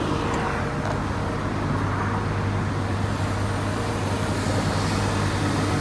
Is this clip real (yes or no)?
yes